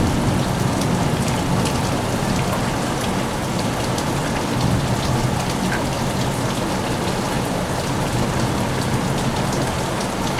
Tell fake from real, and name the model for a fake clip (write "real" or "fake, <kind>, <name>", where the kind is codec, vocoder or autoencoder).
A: real